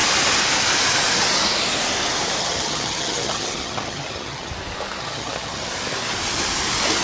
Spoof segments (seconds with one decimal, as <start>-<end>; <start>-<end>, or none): 2.4-4.5; 5.0-5.7